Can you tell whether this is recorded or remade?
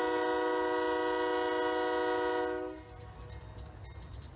recorded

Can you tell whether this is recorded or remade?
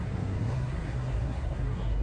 remade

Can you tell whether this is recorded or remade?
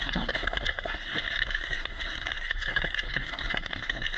remade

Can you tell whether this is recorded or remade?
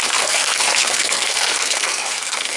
remade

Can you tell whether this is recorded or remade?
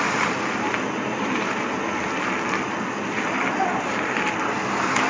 recorded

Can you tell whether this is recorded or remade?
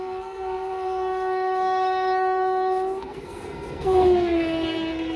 remade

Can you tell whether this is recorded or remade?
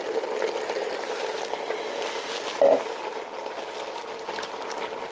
recorded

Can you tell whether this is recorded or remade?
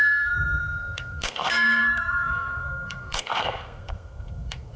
remade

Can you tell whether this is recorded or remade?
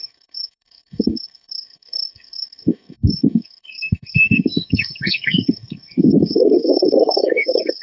remade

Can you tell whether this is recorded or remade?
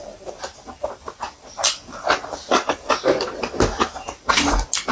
recorded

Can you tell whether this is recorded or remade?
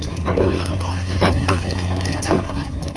remade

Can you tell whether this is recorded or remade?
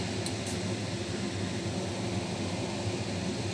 recorded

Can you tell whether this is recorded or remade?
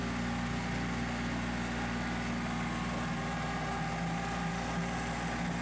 recorded